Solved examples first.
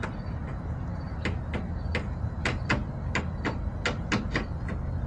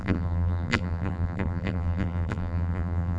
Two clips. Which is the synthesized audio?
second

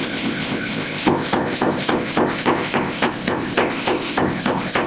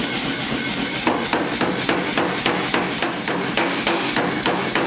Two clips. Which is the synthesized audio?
first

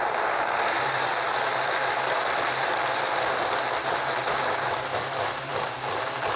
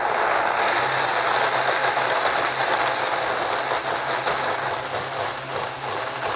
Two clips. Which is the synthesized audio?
first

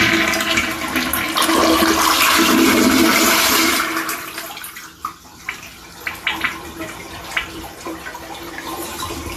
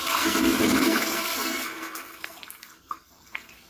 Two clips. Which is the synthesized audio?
second